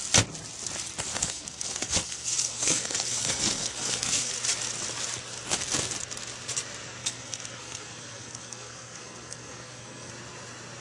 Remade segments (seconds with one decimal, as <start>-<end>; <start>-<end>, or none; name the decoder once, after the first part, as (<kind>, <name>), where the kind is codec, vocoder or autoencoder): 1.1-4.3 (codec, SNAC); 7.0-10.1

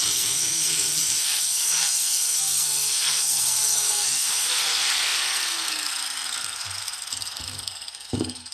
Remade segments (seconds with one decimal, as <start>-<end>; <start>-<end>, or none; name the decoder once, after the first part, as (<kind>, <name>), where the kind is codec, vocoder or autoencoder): 0.0-8.5 (codec, SNAC)

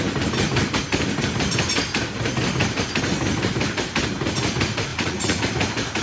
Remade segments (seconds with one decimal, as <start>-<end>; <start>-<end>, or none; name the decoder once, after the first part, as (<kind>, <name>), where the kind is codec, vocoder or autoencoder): 4.9-5.4 (vocoder, Vocos)

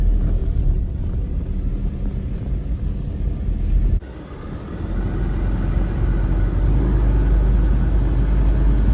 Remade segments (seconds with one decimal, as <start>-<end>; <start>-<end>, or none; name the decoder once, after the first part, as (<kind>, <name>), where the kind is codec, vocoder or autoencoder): 0.4-3.1 (vocoder, BigVGAN v2)